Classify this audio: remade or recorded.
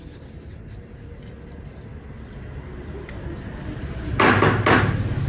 recorded